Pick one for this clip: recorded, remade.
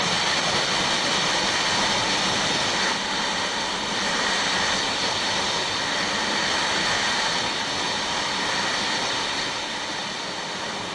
recorded